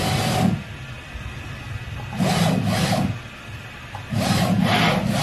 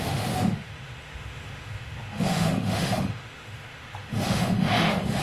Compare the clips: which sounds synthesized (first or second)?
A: second